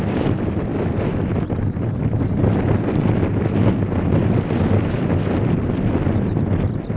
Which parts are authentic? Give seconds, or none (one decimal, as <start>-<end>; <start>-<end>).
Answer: 0.0-7.0